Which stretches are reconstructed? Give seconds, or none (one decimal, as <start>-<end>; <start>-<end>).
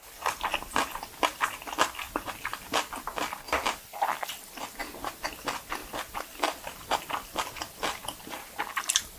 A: 4.8-5.3; 5.8-7.4